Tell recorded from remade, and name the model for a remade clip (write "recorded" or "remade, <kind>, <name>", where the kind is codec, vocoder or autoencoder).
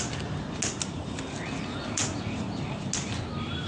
recorded